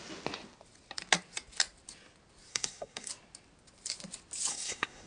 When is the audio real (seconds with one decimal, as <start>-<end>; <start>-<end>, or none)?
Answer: 0.0-2.5; 3.1-4.5